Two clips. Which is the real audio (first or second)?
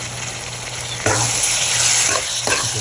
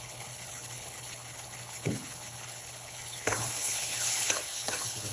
first